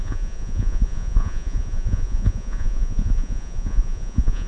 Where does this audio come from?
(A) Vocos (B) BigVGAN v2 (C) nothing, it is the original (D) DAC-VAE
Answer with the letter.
A